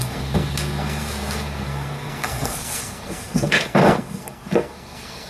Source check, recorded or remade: remade